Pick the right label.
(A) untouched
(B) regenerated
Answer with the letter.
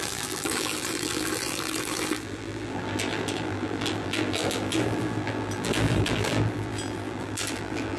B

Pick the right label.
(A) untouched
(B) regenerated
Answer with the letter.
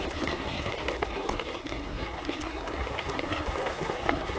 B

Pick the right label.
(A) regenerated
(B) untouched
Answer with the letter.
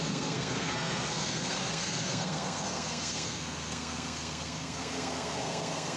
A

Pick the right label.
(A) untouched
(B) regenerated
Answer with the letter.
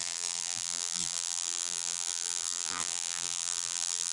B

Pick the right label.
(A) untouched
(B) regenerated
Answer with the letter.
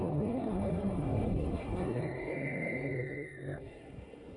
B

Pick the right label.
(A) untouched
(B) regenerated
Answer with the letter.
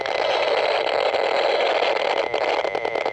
A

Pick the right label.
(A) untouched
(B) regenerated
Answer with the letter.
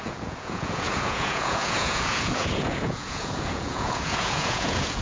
B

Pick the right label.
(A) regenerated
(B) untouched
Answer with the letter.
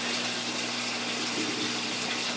B